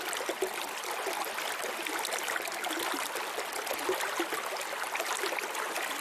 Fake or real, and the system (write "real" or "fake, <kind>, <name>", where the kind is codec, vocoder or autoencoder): real